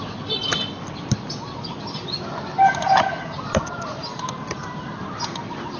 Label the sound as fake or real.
real